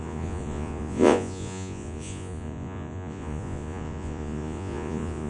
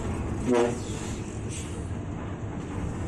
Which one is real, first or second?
second